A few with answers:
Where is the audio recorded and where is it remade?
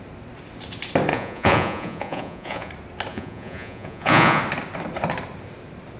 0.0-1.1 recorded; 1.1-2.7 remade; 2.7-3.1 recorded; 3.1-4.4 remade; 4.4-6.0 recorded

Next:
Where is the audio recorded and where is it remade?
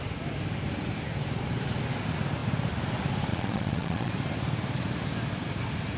0.0-3.3 recorded; 3.3-4.1 remade; 4.1-6.0 recorded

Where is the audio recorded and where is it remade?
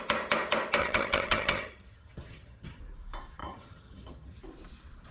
0.0-0.8 recorded; 0.8-2.8 remade; 2.8-3.4 recorded; 3.4-4.4 remade; 4.4-5.1 recorded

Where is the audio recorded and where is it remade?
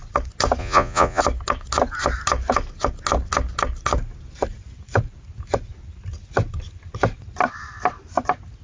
0.0-0.6 recorded; 0.6-1.2 remade; 1.2-8.6 recorded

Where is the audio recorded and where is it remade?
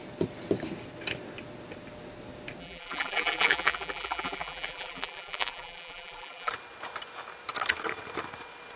0.0-2.6 recorded; 2.6-6.5 remade; 6.5-8.8 recorded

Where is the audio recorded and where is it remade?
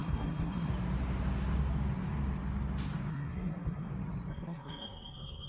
0.0-0.7 remade; 0.7-3.1 recorded; 3.1-3.9 remade; 3.9-4.3 recorded; 4.3-5.5 remade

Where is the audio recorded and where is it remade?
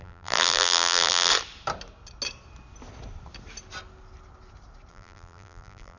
0.0-1.3 remade; 1.3-4.9 recorded; 4.9-6.0 remade